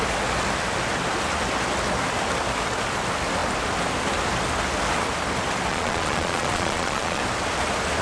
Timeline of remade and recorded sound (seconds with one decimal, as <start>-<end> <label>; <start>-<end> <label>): 0.0-5.7 recorded; 5.7-7.2 remade; 7.2-8.0 recorded